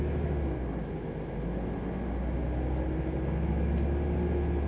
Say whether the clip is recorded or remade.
recorded